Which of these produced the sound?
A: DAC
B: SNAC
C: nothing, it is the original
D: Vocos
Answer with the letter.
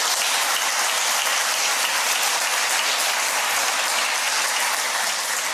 C